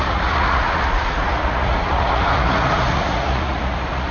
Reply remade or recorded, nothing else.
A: remade